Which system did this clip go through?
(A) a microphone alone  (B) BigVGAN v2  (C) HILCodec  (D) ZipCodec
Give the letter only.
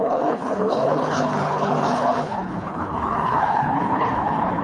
C